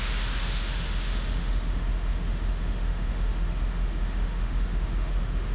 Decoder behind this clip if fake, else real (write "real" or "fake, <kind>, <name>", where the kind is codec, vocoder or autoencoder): fake, autoencoder, DAC-VAE